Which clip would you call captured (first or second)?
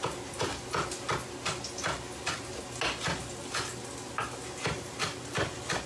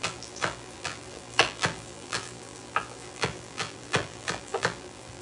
first